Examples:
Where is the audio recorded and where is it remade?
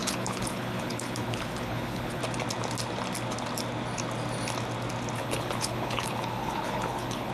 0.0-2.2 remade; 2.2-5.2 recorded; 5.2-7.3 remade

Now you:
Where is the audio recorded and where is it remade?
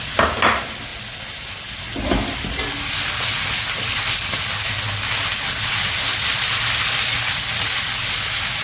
0.0-8.6 recorded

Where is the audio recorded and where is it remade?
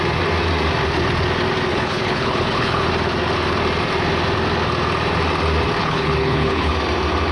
0.0-1.7 recorded; 1.7-2.9 remade; 2.9-5.8 recorded; 5.8-6.7 remade; 6.7-7.3 recorded